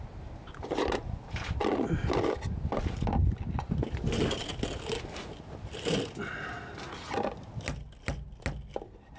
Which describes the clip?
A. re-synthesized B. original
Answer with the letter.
B